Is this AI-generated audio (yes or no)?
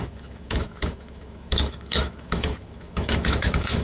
yes